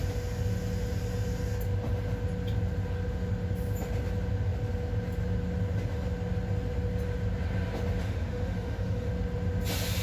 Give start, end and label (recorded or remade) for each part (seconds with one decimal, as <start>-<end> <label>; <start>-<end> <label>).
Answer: 0.0-8.0 recorded; 8.0-9.1 remade; 9.1-10.0 recorded